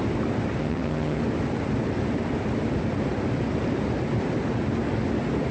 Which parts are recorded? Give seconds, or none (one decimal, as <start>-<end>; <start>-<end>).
0.0-0.6; 1.2-5.5